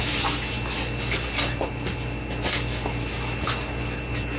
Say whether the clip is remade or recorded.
recorded